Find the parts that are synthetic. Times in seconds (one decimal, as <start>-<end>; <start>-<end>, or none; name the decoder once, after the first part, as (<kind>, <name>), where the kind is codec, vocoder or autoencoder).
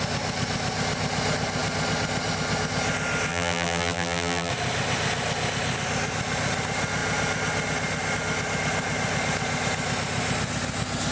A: 3.3-4.5 (vocoder, BigVGAN v2)